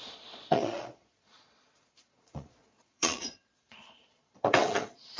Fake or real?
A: fake